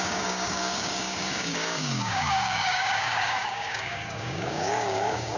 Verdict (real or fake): fake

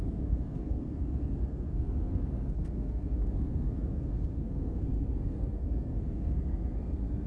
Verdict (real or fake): fake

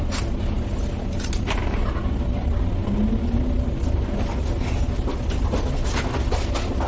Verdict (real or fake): real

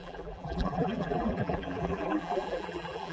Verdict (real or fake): fake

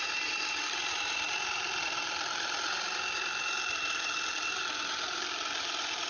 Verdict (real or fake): real